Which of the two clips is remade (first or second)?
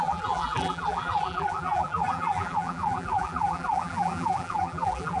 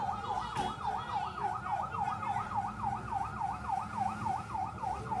first